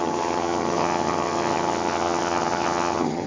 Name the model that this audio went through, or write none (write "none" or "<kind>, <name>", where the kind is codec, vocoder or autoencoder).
vocoder, HiFi-GAN